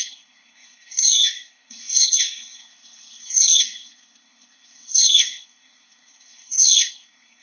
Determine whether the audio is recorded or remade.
remade